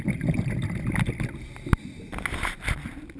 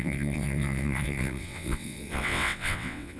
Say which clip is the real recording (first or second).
first